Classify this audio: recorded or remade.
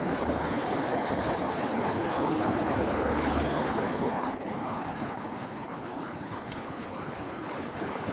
remade